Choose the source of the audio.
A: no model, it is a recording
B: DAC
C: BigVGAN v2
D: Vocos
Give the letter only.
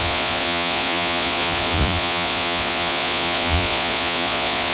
D